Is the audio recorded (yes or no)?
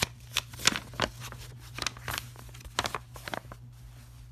yes